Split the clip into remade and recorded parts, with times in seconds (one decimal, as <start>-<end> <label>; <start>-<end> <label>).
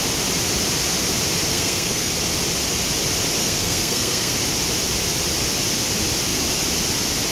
0.0-1.5 recorded; 1.5-2.1 remade; 2.1-3.4 recorded; 3.4-4.3 remade; 4.3-7.3 recorded